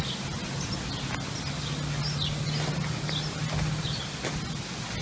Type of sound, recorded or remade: recorded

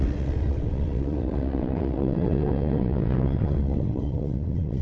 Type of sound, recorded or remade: remade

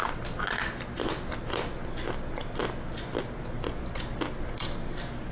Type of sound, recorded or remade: recorded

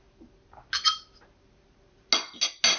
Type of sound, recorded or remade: recorded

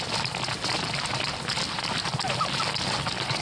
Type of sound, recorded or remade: recorded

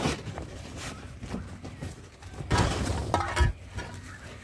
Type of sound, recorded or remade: recorded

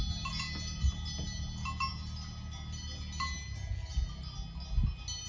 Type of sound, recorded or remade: recorded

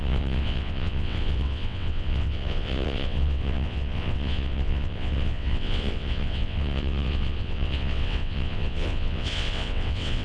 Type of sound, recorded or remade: remade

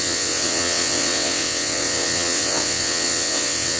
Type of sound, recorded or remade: remade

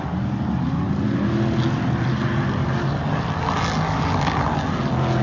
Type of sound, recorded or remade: recorded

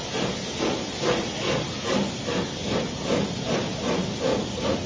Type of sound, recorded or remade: recorded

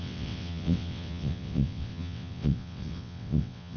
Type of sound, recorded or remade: remade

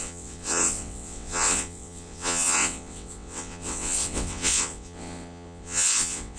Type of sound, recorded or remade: remade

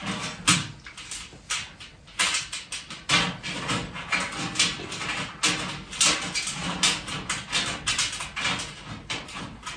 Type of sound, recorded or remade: recorded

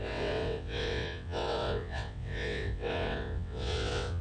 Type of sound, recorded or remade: remade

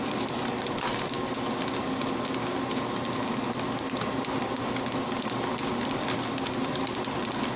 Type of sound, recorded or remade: recorded